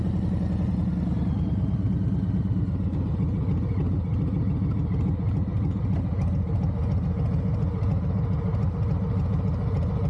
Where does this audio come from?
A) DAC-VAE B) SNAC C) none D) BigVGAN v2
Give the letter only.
C